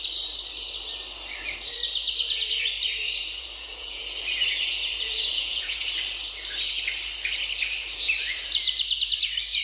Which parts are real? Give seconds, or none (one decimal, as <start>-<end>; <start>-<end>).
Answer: 0.0-3.4; 4.0-5.3; 5.9-9.6